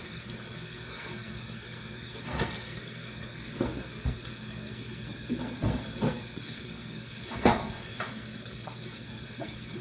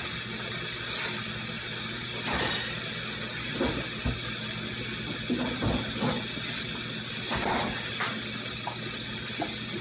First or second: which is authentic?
second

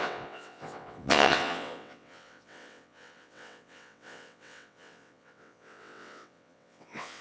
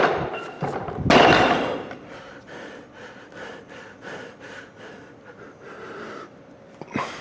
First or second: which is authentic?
second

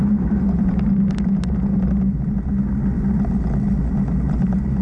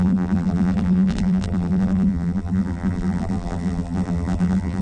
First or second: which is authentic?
first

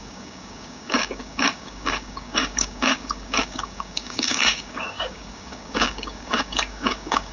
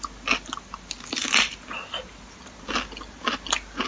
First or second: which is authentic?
second